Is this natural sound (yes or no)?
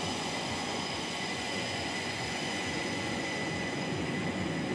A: no